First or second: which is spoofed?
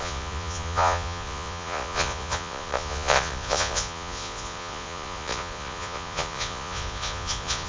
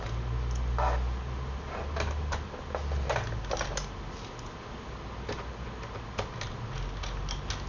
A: first